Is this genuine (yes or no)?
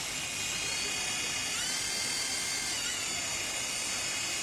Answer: yes